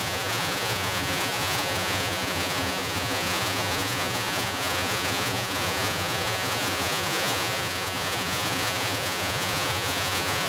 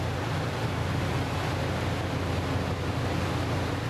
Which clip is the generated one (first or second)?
first